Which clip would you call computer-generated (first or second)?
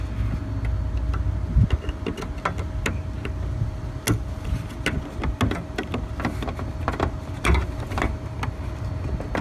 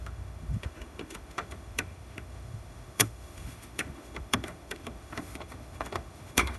second